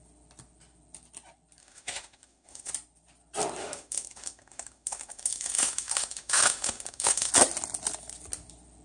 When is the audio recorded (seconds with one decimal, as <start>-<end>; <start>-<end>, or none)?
0.0-1.6; 2.7-3.6; 7.3-8.8